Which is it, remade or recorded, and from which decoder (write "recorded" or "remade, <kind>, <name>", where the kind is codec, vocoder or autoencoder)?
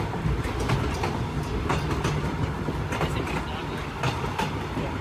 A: recorded